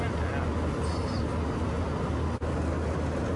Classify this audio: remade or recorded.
recorded